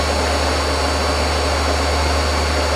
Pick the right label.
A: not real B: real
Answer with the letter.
B